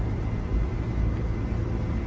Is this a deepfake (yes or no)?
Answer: no